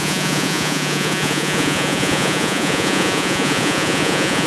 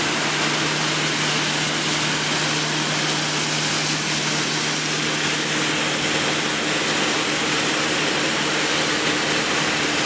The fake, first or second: first